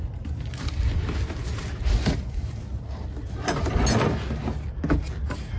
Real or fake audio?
real